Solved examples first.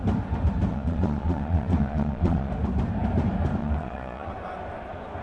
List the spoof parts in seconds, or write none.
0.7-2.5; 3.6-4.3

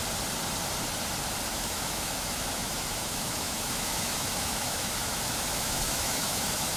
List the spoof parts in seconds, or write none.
1.5-6.8

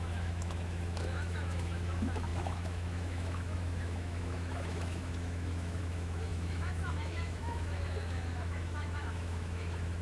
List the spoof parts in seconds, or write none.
0.0-10.0

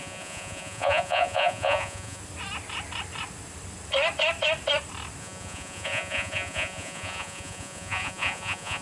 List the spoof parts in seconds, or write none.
0.0-2.2; 5.2-8.8

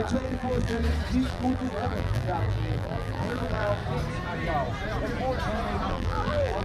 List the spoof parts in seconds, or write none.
0.0-0.8; 1.3-3.8; 5.9-6.6

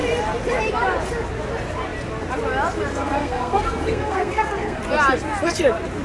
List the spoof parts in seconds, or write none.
2.9-4.8

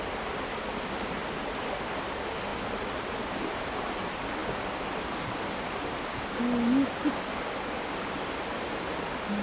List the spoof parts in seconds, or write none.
none